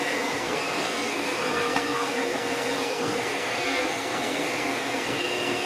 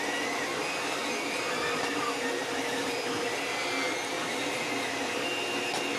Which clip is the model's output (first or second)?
first